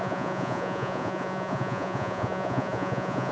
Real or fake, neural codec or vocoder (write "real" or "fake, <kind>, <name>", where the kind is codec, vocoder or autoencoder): fake, vocoder, Vocos